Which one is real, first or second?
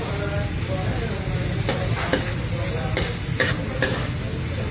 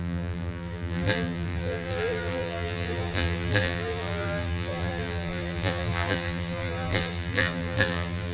first